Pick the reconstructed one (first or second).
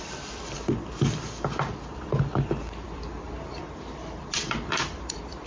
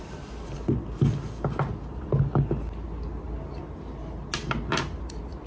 first